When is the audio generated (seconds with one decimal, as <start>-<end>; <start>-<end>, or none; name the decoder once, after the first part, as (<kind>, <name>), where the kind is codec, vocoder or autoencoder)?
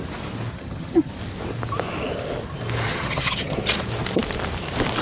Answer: 0.5-1.1 (vocoder, HiFi-GAN); 2.9-3.6